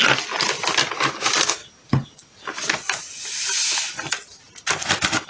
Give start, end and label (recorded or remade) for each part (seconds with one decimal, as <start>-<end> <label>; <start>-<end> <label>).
0.0-5.3 recorded